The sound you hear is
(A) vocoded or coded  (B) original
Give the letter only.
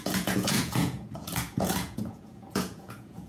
A